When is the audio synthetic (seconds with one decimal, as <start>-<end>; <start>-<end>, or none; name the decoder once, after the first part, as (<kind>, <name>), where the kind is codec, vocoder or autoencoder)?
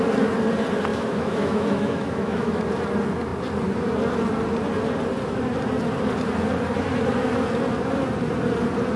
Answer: 0.9-2.6 (autoencoder, DAC-VAE)